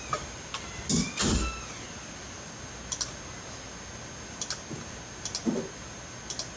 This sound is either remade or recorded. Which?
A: recorded